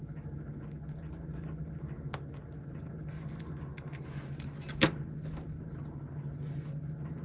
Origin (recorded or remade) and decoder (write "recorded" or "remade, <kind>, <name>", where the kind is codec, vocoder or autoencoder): recorded